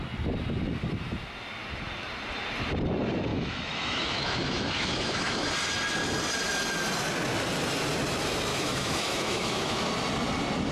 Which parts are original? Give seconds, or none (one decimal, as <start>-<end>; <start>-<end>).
0.0-3.3; 5.5-8.5; 9.9-10.7